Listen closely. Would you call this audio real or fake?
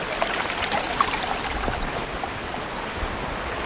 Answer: real